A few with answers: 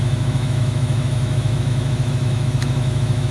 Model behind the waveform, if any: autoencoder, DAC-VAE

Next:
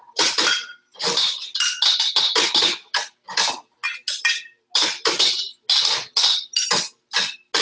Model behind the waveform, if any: none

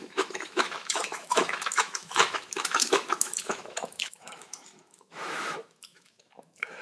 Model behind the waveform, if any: autoencoder, DAC-VAE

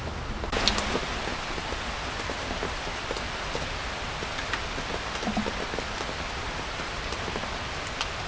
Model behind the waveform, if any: none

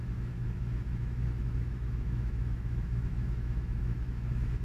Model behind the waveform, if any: autoencoder, DAC-VAE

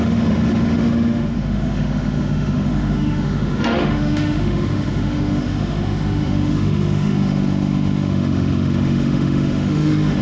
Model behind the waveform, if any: autoencoder, DAC-VAE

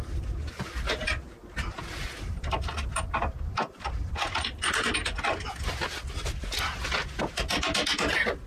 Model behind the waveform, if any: none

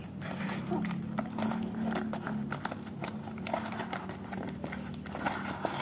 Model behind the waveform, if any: none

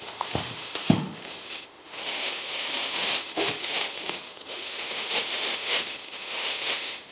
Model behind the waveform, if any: autoencoder, DAC-VAE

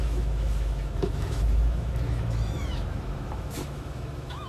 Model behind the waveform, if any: autoencoder, DAC-VAE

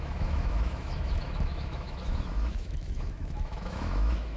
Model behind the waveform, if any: autoencoder, DAC-VAE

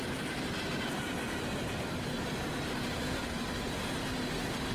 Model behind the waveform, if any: none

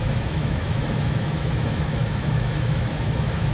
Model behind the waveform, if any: autoencoder, DAC-VAE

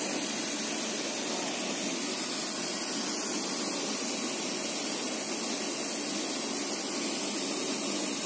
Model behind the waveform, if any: none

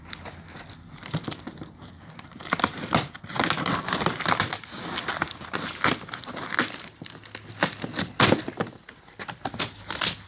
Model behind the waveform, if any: none